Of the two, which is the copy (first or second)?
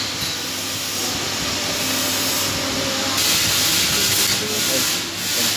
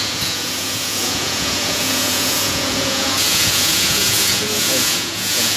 second